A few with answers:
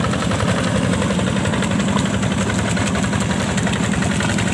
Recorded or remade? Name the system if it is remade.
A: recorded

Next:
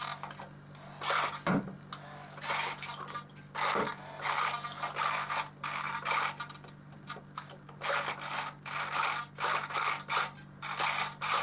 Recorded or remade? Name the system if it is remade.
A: recorded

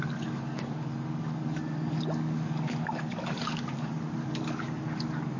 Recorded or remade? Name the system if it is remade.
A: remade, codec, DAC